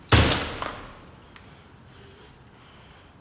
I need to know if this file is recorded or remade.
recorded